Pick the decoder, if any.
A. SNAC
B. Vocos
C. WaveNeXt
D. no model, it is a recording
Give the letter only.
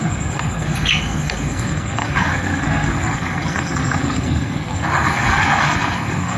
A